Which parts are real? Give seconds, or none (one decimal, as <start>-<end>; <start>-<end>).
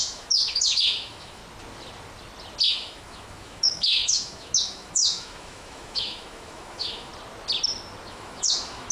1.4-2.7; 7.1-8.1